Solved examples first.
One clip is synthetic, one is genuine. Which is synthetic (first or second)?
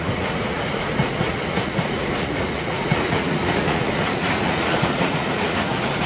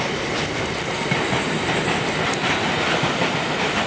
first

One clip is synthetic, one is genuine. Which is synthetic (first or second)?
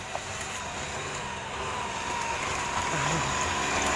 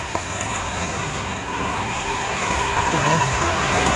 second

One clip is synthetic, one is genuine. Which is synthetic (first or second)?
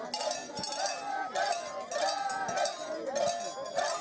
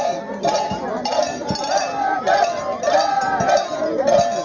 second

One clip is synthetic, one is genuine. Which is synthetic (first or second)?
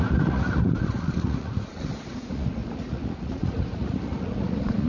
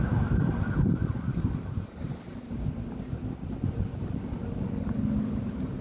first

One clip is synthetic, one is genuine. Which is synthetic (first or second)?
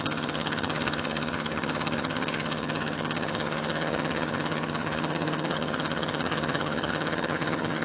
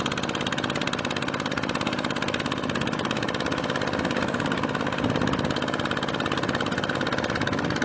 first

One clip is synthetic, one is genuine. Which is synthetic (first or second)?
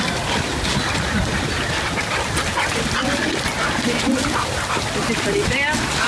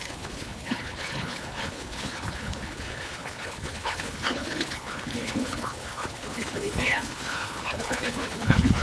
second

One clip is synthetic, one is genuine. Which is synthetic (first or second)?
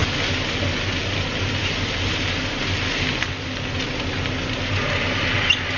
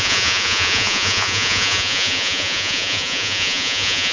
second